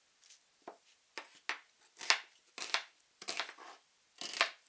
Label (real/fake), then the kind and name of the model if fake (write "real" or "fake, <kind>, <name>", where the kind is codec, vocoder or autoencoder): real